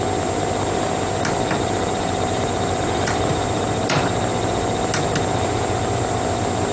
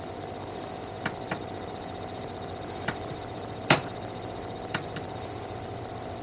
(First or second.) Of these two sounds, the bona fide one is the first